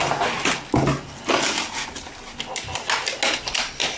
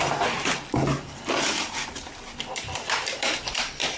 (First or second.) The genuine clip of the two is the first